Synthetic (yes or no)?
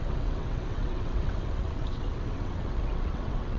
yes